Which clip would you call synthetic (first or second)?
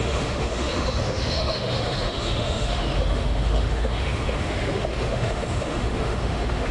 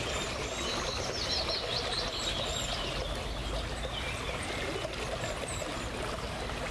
first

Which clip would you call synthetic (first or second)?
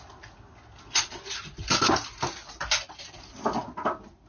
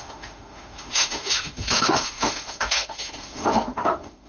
second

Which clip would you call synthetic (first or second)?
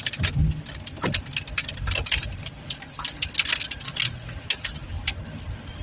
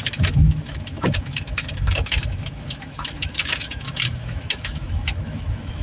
second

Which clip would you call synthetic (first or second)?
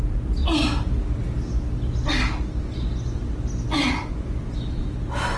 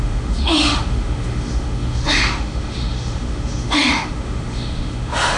second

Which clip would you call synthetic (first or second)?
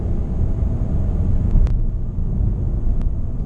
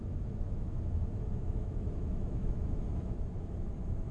second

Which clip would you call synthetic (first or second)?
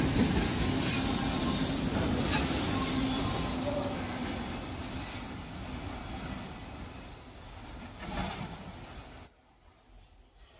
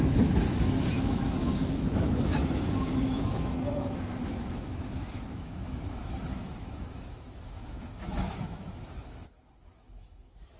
second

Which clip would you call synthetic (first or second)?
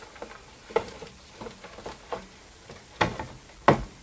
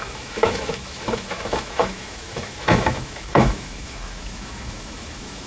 second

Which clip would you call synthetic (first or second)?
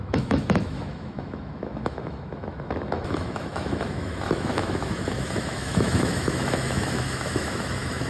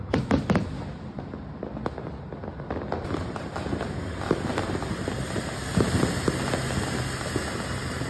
first